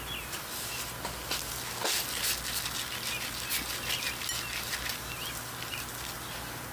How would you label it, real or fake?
real